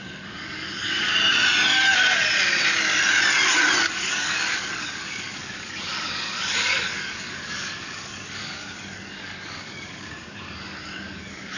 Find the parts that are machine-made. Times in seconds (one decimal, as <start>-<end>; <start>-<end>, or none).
0.0-1.1; 3.8-11.6